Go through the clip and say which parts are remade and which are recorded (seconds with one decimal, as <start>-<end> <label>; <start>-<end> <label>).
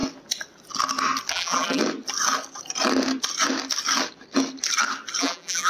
0.0-1.3 recorded; 1.3-1.8 remade; 1.8-5.2 recorded; 5.2-5.7 remade